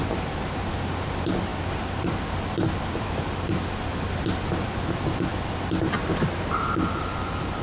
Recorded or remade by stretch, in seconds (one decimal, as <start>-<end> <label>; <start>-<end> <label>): 0.0-7.6 remade